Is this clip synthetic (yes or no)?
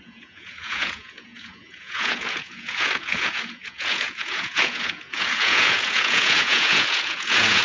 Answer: yes